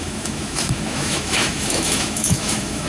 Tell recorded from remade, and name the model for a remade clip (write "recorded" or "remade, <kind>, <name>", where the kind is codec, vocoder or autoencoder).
remade, autoencoder, DAC-VAE